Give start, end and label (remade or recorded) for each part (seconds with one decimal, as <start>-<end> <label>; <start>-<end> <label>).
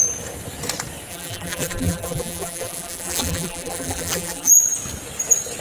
0.0-1.1 recorded; 1.1-4.5 remade; 4.5-5.6 recorded